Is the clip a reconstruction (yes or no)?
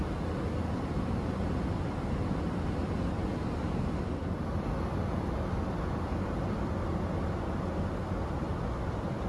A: no